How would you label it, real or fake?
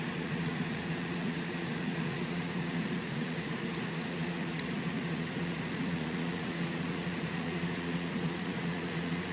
fake